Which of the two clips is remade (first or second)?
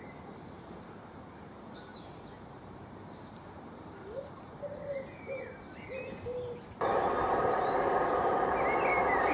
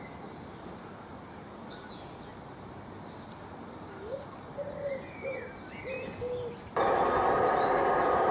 first